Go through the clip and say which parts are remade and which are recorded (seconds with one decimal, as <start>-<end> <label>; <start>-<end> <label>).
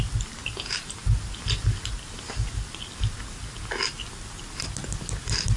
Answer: 0.0-5.6 recorded